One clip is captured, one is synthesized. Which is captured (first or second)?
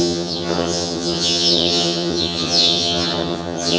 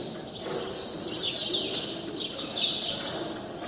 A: second